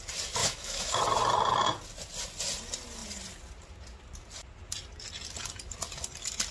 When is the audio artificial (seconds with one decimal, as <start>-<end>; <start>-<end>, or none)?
0.4-1.0